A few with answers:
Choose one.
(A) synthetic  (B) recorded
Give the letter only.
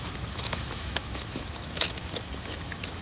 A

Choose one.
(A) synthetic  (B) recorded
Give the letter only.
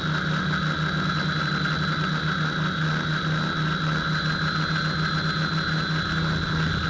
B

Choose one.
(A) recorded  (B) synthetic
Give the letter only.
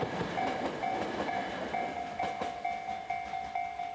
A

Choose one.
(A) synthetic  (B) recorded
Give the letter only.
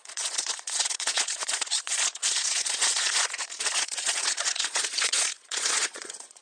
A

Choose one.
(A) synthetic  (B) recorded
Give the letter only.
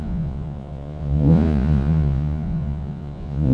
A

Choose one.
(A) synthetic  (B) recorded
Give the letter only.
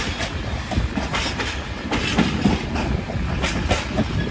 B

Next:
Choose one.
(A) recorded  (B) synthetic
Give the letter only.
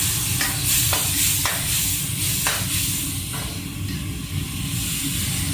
A